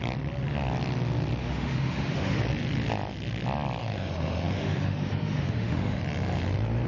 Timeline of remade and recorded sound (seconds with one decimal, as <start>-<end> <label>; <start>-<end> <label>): 0.0-1.4 recorded; 1.4-2.4 remade; 2.4-3.8 recorded; 3.8-6.0 remade; 6.0-6.9 recorded